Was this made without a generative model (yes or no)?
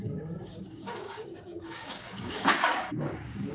no